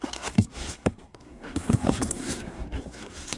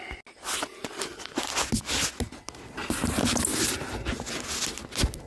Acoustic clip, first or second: second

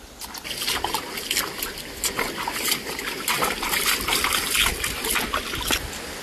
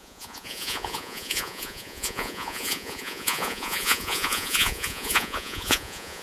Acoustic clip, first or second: first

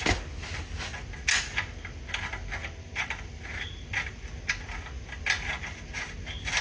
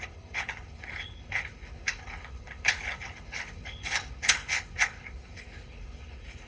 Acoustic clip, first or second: first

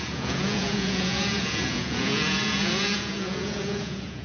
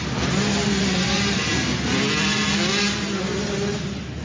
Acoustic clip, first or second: second